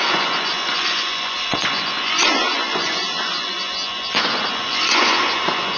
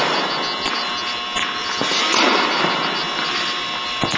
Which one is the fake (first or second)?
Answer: first